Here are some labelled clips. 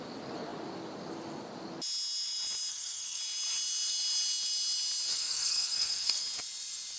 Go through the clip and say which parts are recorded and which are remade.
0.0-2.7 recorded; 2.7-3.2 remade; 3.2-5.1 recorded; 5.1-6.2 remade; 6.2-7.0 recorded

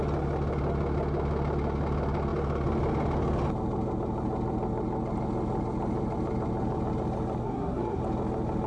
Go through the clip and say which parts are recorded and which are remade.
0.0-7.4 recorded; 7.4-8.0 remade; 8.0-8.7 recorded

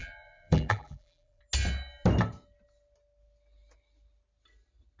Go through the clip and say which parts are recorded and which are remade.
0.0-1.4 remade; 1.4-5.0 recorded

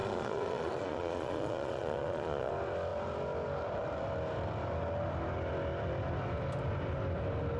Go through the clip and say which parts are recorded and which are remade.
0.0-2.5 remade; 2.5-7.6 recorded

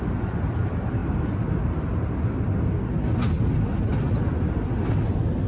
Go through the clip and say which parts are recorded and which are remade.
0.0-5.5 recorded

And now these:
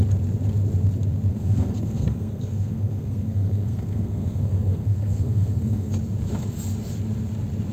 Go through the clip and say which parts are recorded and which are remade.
0.0-1.3 recorded; 1.3-5.9 remade; 5.9-7.7 recorded